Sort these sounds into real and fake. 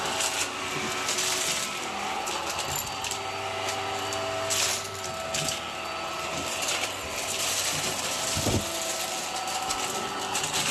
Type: real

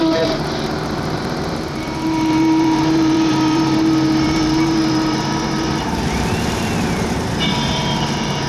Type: fake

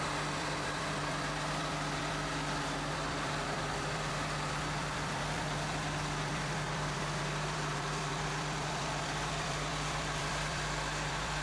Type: fake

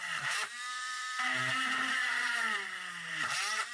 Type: fake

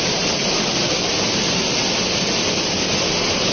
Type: real